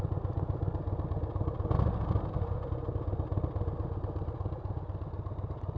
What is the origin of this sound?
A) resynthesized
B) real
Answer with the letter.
B